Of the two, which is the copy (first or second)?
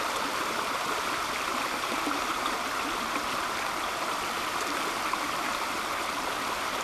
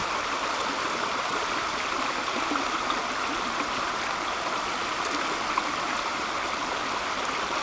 first